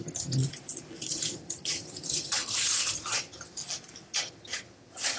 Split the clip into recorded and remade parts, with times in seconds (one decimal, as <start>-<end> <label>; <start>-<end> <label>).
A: 0.0-0.4 remade; 0.4-1.1 recorded; 1.1-3.6 remade; 3.6-4.2 recorded; 4.2-5.2 remade